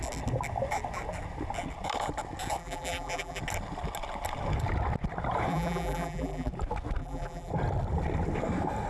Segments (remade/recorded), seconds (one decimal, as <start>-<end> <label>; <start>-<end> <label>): 0.0-2.6 recorded; 2.6-3.4 remade; 3.4-5.5 recorded; 5.5-6.5 remade; 6.5-7.0 recorded; 7.0-7.5 remade; 7.5-8.9 recorded